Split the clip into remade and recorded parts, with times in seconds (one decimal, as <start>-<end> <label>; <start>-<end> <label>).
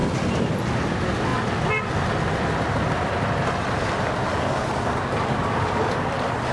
0.0-4.3 recorded; 4.3-6.1 remade; 6.1-6.5 recorded